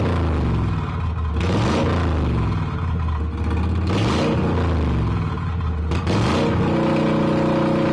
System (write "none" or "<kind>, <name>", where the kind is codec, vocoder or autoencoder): none